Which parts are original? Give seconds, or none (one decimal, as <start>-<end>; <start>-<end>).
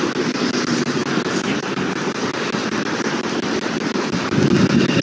0.0-5.0